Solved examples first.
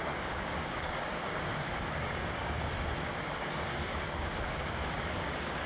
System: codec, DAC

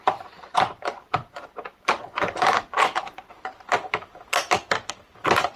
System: vocoder, BigVGAN v2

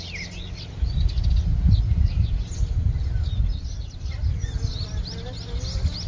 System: none